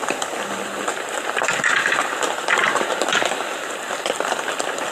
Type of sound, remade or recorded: remade